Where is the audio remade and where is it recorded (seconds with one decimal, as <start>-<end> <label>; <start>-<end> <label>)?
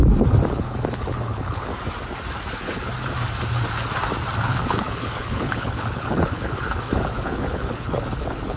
0.0-0.5 recorded; 0.5-1.7 remade; 1.7-2.5 recorded; 2.5-2.9 remade; 2.9-4.4 recorded; 4.4-8.6 remade